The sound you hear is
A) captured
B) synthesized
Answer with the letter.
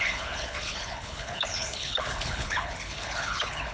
B